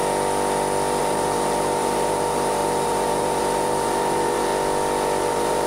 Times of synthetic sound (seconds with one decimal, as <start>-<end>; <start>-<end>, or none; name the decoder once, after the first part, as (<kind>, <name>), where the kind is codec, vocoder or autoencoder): 1.0-4.5 (vocoder, BigVGAN v2); 5.2-5.7